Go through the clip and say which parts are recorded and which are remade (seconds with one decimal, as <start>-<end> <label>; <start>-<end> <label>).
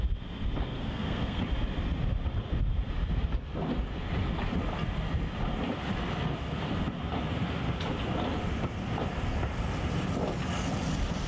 0.0-0.8 recorded; 0.8-1.4 remade; 1.4-11.3 recorded